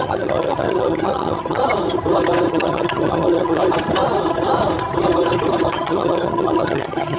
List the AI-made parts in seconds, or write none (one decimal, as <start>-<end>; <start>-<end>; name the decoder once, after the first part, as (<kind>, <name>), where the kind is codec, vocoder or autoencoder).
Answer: 0.0-1.6 (vocoder, HiFi-GAN); 2.5-3.6; 5.7-7.2